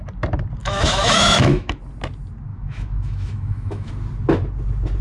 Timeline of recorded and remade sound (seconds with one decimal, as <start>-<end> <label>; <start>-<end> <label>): 0.0-0.6 recorded; 0.6-1.8 remade; 1.8-2.5 recorded; 2.5-3.9 remade; 3.9-5.0 recorded